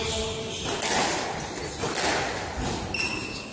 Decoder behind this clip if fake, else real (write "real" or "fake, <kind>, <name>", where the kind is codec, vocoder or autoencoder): real